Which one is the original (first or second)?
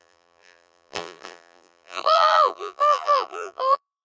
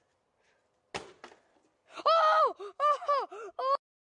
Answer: second